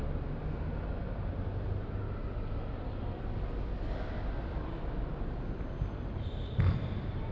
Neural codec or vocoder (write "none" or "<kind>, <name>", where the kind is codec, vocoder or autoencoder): none